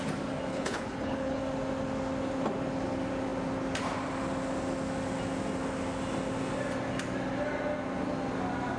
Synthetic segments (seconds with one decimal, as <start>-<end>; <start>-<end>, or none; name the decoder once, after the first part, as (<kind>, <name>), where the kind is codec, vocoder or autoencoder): 0.5-1.4 (codec, HILCodec)